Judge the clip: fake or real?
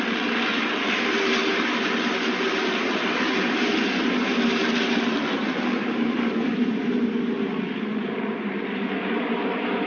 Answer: fake